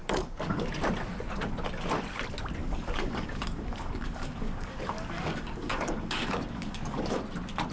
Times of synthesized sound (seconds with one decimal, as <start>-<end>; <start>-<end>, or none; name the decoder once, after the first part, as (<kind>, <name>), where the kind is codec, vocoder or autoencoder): 0.0-0.7 (codec, DAC); 2.6-7.2